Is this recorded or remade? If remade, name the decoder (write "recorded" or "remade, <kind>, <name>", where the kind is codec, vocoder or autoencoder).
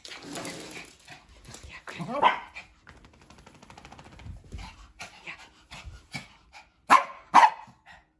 recorded